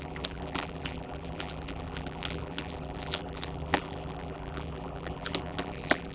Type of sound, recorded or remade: remade